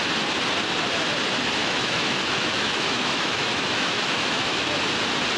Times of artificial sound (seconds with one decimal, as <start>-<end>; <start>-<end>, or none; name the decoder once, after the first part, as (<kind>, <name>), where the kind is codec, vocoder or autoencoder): 1.6-4.8 (autoencoder, DAC-VAE)